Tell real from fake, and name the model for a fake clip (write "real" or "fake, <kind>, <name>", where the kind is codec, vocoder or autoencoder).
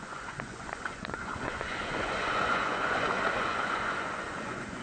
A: fake, vocoder, Vocos